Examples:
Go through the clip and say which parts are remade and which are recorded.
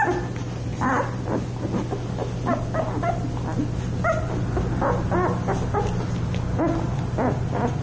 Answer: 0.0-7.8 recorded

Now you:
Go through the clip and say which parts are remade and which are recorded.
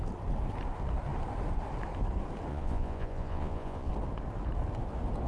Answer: 0.0-2.5 recorded; 2.5-3.9 remade; 3.9-5.3 recorded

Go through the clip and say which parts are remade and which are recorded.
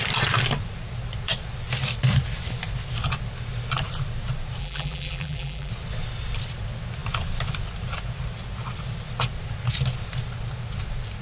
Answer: 0.0-4.6 recorded; 4.6-5.7 remade; 5.7-11.2 recorded